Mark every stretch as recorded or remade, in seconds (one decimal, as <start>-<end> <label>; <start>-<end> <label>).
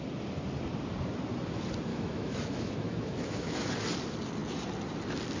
0.0-1.9 recorded; 1.9-3.7 remade; 3.7-5.4 recorded